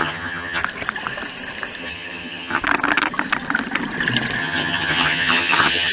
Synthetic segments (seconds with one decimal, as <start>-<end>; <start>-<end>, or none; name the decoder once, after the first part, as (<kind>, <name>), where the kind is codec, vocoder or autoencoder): 0.0-0.6 (vocoder, HiFi-GAN); 1.8-2.6; 4.4-5.9